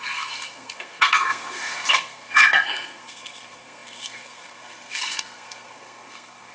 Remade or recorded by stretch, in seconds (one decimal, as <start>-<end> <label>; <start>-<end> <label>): 0.0-6.5 remade